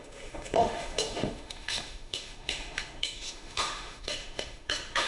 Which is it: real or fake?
fake